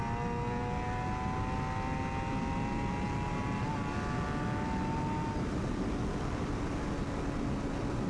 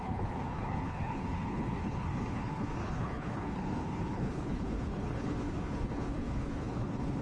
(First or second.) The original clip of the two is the first